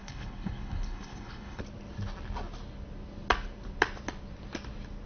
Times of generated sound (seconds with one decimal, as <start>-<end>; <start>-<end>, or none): 0.0-1.6